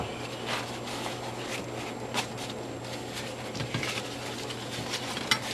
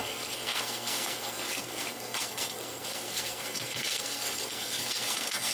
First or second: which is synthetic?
second